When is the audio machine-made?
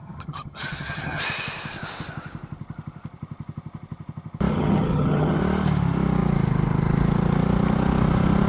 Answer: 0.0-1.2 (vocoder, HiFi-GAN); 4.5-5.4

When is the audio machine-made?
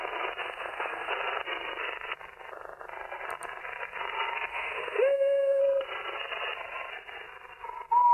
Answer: 0.4-1.1 (autoencoder, DAC-VAE); 4.5-5.6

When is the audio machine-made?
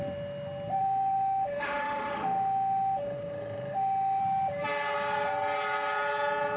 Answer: 0.8-4.2 (autoencoder, DAC-VAE)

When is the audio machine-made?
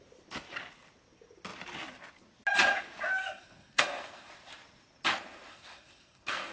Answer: 3.2-4.3 (codec, SNAC); 5.5-6.5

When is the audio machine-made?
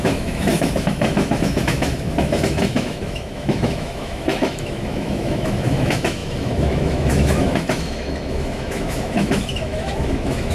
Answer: 0.0-10.5 (autoencoder, DAC-VAE)